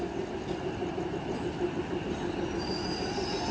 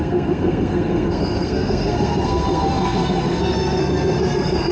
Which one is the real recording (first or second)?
first